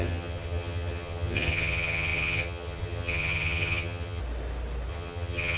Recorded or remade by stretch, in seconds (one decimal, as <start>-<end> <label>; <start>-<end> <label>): 0.0-4.2 remade; 4.2-4.9 recorded; 4.9-5.6 remade